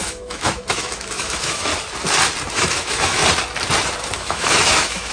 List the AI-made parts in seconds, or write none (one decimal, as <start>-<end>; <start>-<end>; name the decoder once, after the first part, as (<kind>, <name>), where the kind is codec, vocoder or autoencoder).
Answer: 0.0-1.7 (autoencoder, DAC-VAE); 2.5-3.2; 4.0-5.1